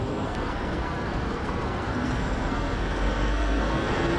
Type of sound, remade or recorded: remade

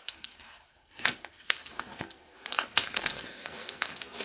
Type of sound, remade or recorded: remade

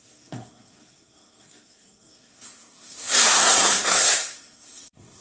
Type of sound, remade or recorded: remade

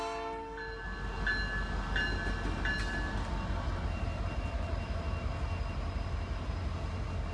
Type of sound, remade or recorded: recorded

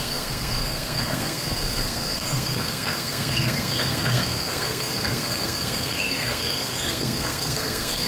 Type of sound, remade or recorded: remade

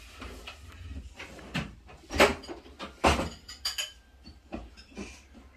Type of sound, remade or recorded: recorded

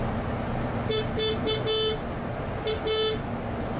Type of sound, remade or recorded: recorded